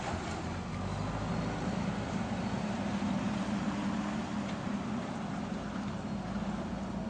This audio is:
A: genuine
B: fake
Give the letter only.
A